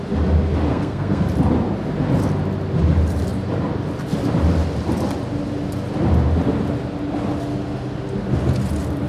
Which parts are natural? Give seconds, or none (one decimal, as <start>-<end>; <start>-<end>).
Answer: 0.0-0.7; 1.2-9.1